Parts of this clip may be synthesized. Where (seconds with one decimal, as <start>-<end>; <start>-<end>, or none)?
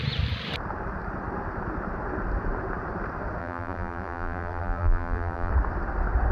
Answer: 3.4-5.5